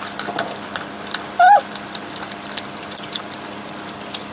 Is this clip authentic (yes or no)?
yes